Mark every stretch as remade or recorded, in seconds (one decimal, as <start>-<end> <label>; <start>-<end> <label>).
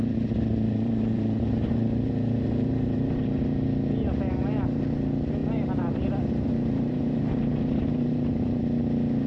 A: 0.0-0.5 recorded; 0.5-3.2 remade; 3.2-5.4 recorded; 5.4-8.6 remade; 8.6-9.3 recorded